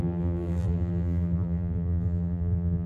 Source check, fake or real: fake